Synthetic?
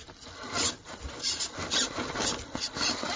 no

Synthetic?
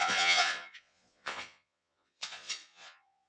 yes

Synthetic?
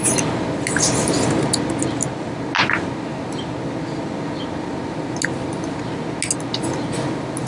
no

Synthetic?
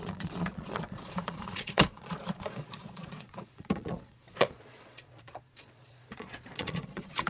yes